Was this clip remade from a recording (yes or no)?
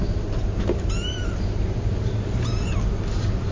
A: no